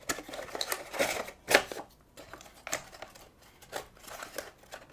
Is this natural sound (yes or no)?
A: yes